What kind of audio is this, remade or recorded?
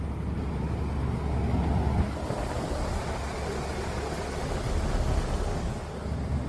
recorded